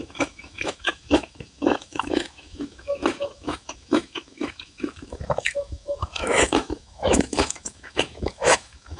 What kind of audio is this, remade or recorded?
remade